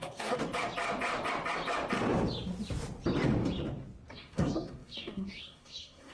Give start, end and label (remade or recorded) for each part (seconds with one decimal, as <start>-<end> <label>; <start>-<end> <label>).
0.0-0.4 remade; 0.4-4.1 recorded; 4.1-6.1 remade